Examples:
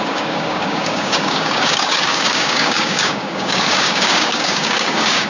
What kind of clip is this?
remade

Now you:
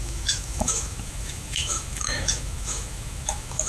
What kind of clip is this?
remade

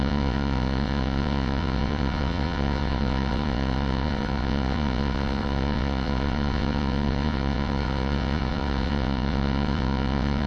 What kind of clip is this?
remade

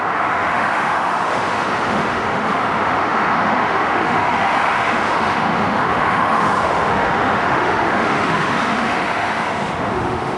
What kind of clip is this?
remade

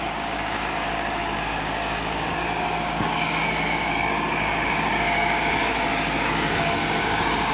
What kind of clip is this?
remade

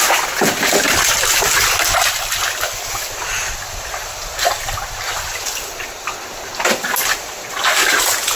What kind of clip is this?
recorded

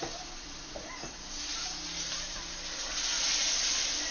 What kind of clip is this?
recorded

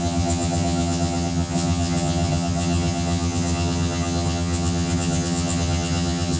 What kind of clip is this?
remade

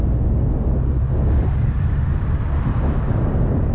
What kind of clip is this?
recorded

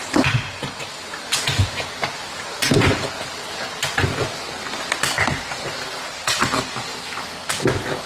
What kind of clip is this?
recorded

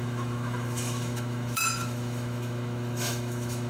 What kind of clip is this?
remade